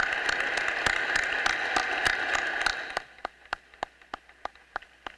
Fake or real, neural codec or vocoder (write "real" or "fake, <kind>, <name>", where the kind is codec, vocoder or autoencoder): real